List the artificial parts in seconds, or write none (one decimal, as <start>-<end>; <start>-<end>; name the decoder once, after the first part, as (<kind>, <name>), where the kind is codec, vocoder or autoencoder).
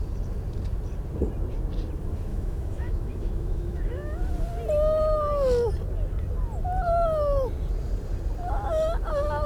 2.3-4.2 (autoencoder, DAC-VAE)